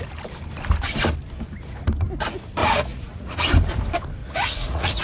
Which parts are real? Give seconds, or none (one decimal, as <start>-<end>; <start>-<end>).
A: 0.0-2.6; 3.5-4.2